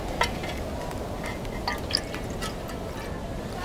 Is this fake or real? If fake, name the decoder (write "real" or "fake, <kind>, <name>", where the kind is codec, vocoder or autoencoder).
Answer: real